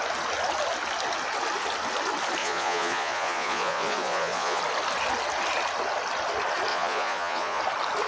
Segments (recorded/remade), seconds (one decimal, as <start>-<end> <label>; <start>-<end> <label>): 0.0-2.4 recorded; 2.4-4.6 remade; 4.6-6.7 recorded; 6.7-7.6 remade; 7.6-8.1 recorded